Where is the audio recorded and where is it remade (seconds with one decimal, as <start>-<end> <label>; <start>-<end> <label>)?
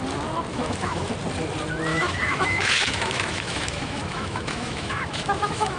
0.0-0.5 recorded; 0.5-1.1 remade; 1.1-1.9 recorded; 1.9-5.8 remade